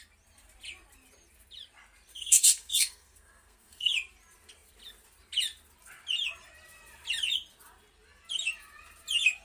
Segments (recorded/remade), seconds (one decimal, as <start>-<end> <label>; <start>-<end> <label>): 0.0-2.1 recorded; 2.1-3.9 remade; 3.9-9.4 recorded